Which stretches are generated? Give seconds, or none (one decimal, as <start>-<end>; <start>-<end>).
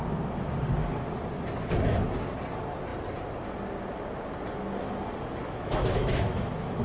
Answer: 5.4-6.8